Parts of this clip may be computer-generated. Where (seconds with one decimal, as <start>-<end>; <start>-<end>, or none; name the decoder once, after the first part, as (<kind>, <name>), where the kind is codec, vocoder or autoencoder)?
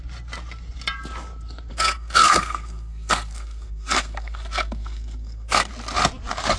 1.7-5.7 (codec, SNAC)